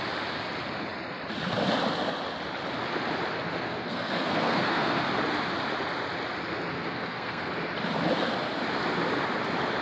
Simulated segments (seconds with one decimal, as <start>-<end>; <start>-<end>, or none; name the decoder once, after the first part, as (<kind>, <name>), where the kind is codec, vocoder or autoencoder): 3.5-5.0 (codec, SNAC); 6.7-7.5